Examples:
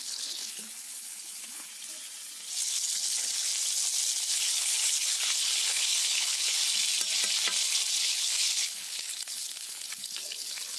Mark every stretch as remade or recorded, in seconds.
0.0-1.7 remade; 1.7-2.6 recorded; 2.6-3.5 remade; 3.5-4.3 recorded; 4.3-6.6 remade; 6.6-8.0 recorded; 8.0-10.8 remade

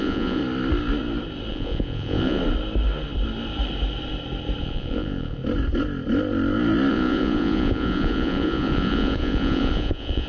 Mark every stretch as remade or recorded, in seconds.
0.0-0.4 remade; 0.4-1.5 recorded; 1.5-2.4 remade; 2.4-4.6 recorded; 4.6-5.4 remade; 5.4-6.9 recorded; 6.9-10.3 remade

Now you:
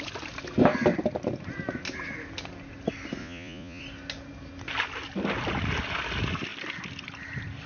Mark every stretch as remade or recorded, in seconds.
0.0-3.2 recorded; 3.2-3.8 remade; 3.8-7.7 recorded